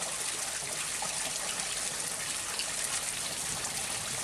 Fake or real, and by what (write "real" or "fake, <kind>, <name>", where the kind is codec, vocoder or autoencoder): real